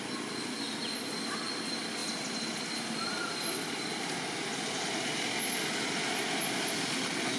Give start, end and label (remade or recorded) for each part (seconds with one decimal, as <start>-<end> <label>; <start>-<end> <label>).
0.0-7.4 recorded